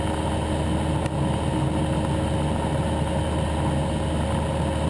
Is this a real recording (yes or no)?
yes